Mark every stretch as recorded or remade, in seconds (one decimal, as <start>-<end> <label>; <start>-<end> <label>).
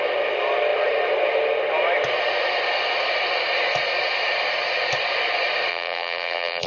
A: 0.0-5.7 recorded; 5.7-6.7 remade